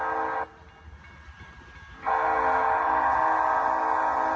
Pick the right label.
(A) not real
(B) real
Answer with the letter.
B